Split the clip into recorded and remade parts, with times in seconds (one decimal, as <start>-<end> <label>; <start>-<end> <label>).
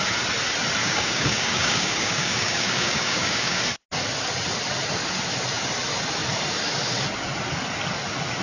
0.0-0.8 recorded; 0.8-3.6 remade; 3.6-8.4 recorded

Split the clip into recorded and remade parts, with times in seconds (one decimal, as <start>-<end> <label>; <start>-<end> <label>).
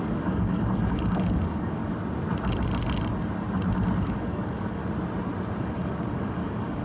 0.0-1.8 remade; 1.8-4.0 recorded; 4.0-4.8 remade; 4.8-5.6 recorded; 5.6-6.8 remade